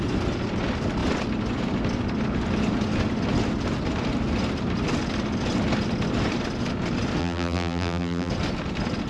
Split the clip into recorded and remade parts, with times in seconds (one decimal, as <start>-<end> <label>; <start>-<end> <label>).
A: 0.0-7.2 recorded; 7.2-8.3 remade; 8.3-9.1 recorded